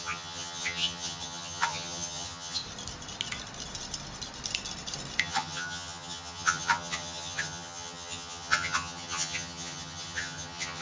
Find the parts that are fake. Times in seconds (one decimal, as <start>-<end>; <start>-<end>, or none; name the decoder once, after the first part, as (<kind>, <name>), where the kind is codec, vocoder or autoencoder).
0.0-2.6 (vocoder, HiFi-GAN); 5.2-10.8